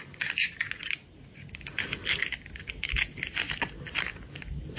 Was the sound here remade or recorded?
recorded